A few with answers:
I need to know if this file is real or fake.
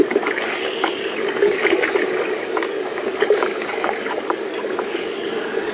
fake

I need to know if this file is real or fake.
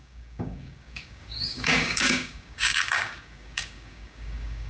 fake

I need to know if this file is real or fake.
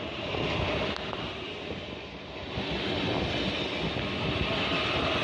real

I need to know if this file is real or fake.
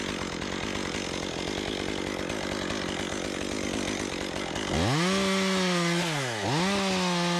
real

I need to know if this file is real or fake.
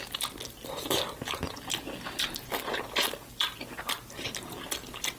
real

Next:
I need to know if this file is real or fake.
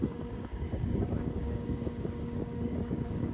fake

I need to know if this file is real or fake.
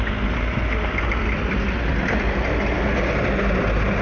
real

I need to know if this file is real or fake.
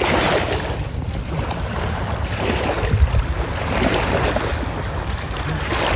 real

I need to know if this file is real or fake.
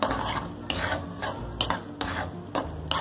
real